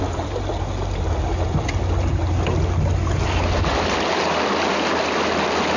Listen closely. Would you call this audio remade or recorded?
recorded